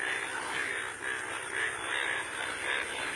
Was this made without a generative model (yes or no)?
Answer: yes